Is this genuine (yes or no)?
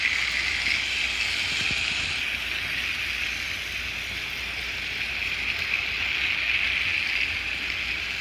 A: yes